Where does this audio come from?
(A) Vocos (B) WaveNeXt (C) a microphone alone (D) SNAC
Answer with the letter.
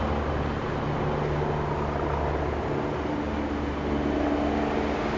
C